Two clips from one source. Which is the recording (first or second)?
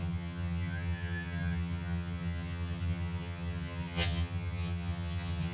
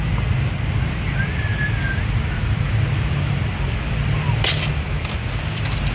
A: second